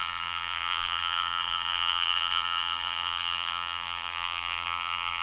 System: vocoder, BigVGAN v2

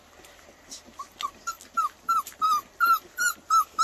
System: none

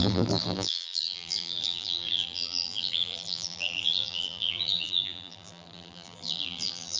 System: vocoder, BigVGAN v2